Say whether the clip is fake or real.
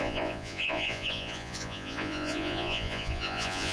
fake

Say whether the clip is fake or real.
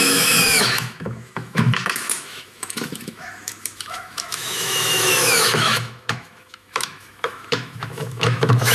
fake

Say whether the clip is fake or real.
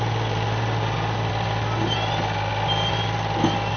real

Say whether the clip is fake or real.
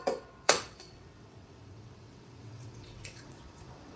fake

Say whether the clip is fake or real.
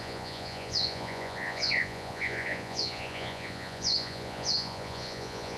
fake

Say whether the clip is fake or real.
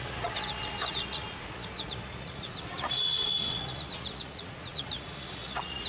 fake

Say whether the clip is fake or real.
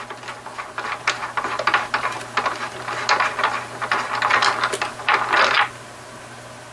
real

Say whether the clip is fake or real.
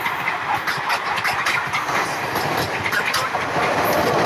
real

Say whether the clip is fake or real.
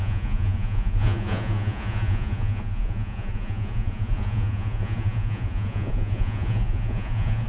fake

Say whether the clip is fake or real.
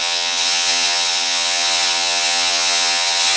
fake